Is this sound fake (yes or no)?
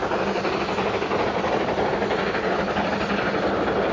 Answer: no